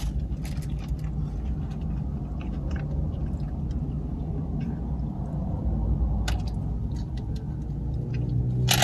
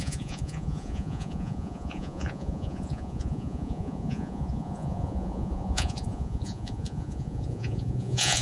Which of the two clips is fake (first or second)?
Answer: second